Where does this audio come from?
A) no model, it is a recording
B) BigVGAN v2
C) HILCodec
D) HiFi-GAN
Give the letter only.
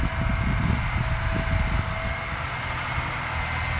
A